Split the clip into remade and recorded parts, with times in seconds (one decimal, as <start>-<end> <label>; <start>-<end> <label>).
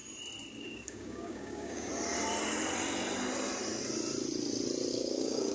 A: 0.0-0.6 recorded; 0.6-1.9 remade; 1.9-4.9 recorded; 4.9-5.5 remade